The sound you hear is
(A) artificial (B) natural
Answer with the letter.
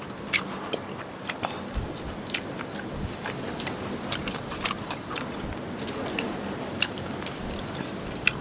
A